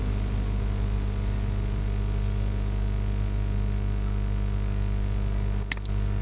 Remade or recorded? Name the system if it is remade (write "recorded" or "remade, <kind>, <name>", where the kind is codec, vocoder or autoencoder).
recorded